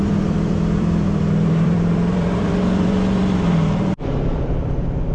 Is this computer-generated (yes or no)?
yes